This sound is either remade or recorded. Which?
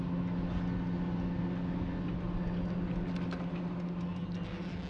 recorded